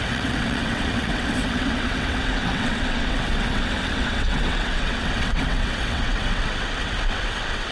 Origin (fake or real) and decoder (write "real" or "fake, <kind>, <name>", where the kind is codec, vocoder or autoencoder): fake, vocoder, WaveNeXt